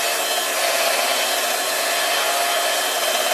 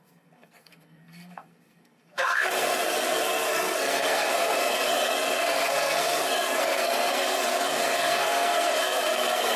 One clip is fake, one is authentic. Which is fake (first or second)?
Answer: second